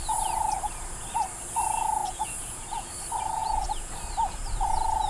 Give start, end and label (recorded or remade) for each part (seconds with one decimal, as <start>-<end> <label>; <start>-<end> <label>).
0.0-2.0 recorded; 2.0-2.9 remade; 2.9-3.4 recorded; 3.4-3.9 remade; 3.9-5.1 recorded